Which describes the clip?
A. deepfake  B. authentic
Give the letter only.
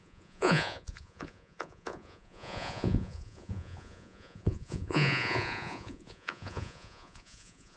A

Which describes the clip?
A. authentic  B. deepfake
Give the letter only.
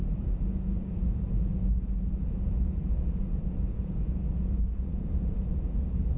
B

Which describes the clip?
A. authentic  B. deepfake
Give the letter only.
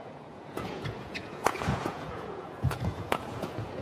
B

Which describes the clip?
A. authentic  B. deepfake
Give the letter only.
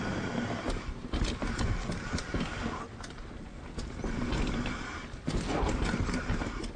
A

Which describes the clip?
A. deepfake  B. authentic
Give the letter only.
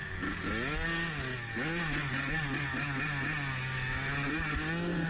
B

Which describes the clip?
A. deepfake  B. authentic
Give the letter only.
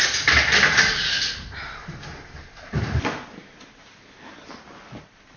B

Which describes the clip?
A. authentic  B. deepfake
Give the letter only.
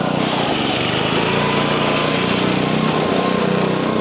A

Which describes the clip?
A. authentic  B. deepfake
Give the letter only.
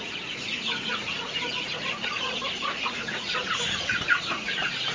B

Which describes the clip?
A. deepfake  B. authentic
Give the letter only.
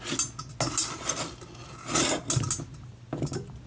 B